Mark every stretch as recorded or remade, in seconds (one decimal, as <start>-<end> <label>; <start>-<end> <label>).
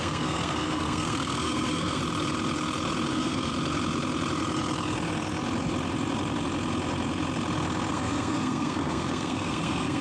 0.0-2.0 remade; 2.0-3.1 recorded; 3.1-3.5 remade; 3.5-7.9 recorded; 7.9-10.0 remade